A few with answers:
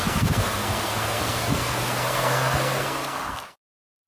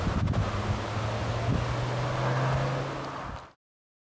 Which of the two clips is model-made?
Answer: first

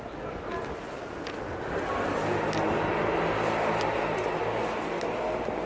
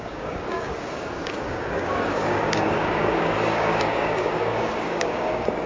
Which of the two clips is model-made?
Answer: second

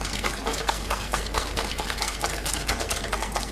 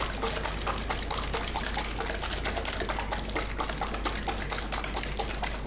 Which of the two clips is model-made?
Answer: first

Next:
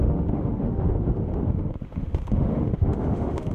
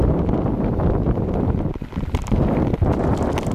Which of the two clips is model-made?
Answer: first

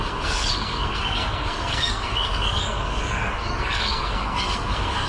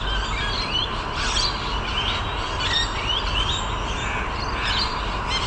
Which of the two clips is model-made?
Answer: first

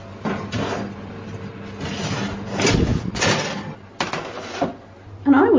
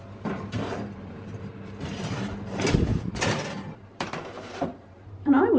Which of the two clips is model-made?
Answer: second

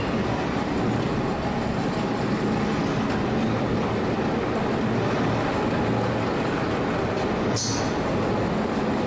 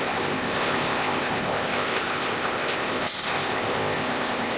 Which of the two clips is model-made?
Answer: second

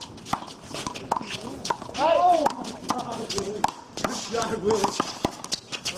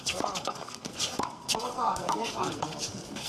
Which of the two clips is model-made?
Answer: second